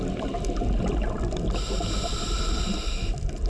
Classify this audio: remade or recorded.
recorded